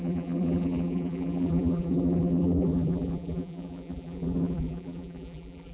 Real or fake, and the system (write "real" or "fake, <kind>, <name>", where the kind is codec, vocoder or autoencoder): fake, vocoder, BigVGAN v2